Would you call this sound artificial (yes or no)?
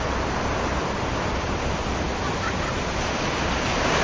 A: no